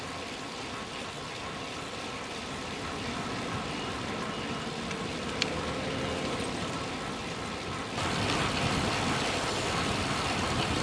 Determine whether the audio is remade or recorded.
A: recorded